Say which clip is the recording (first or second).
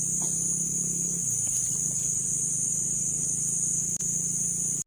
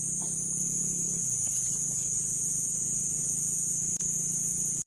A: first